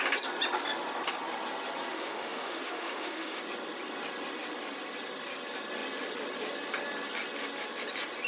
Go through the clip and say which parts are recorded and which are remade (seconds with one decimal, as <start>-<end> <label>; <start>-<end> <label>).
0.0-1.9 recorded; 1.9-3.4 remade; 3.4-8.3 recorded